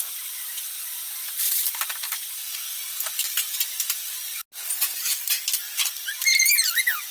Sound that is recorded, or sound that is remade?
recorded